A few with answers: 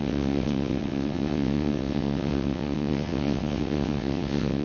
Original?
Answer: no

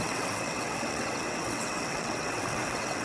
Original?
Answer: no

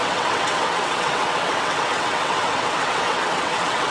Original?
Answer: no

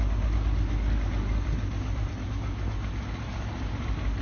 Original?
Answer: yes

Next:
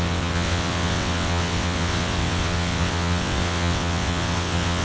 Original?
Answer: no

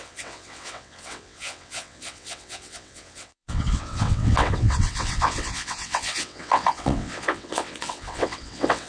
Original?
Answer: no